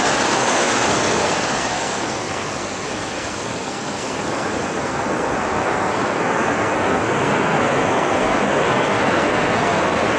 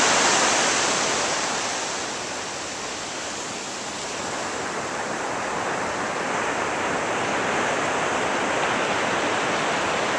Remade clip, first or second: first